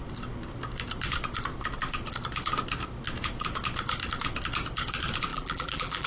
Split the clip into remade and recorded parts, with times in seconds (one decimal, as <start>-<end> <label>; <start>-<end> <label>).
0.0-5.3 recorded; 5.3-6.1 remade